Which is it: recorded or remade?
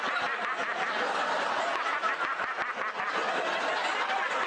recorded